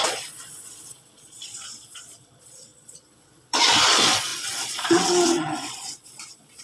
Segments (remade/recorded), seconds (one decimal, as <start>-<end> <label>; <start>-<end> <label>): 0.0-6.6 remade